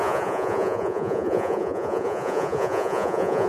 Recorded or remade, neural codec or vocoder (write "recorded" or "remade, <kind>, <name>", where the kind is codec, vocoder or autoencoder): remade, vocoder, Vocos